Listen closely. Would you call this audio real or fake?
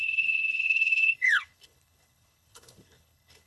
fake